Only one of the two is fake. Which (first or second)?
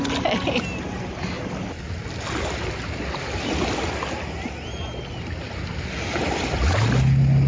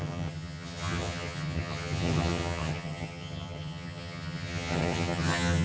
second